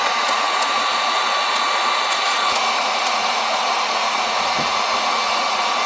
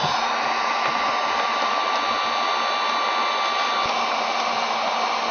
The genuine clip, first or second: second